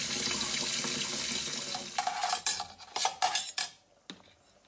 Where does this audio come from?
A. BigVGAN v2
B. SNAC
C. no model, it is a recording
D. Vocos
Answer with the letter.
C